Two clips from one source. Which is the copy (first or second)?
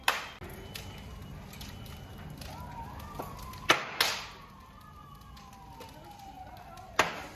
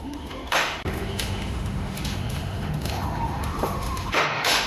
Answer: second